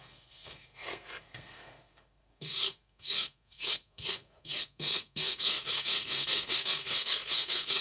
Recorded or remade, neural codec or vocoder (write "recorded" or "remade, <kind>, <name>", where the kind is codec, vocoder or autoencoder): remade, codec, SNAC